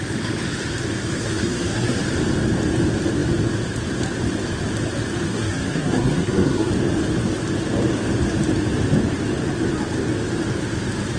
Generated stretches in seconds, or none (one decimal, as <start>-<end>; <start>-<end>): 1.2-2.0; 5.3-6.7